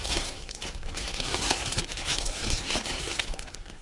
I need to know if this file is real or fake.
fake